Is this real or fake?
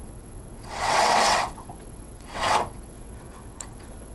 fake